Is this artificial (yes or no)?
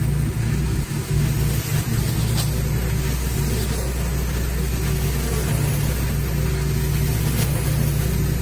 no